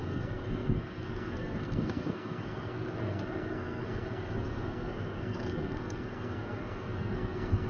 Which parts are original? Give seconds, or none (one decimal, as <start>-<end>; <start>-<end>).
none